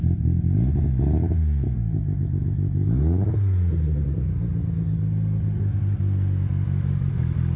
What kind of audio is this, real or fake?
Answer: real